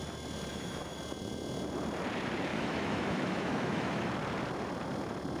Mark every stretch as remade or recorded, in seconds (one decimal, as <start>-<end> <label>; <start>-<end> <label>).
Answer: 0.0-0.5 recorded; 0.5-1.0 remade; 1.0-2.5 recorded; 2.5-4.1 remade; 4.1-5.4 recorded